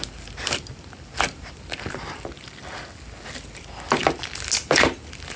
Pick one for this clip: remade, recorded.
recorded